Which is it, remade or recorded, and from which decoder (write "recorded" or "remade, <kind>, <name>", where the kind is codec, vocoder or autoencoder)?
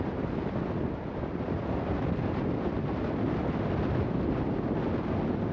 recorded